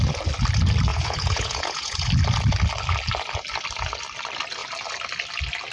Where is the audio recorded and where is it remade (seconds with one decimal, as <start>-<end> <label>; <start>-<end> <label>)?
0.0-0.9 recorded; 0.9-2.1 remade; 2.1-5.7 recorded